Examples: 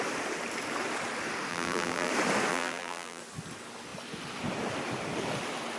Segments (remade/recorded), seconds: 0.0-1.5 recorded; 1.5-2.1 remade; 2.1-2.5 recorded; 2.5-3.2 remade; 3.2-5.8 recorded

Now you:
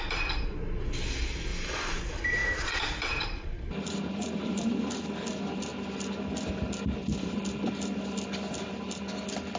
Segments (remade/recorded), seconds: 0.0-1.5 recorded; 1.5-2.0 remade; 2.0-2.4 recorded; 2.4-4.9 remade; 4.9-9.6 recorded

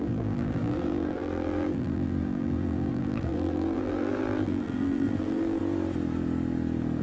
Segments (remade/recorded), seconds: 0.0-5.6 remade; 5.6-7.0 recorded

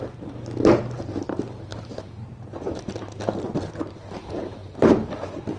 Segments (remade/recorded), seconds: 0.0-1.7 recorded; 1.7-3.7 remade; 3.7-4.6 recorded; 4.6-5.1 remade; 5.1-5.6 recorded